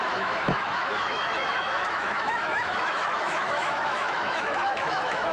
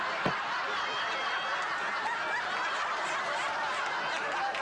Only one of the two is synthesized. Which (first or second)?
first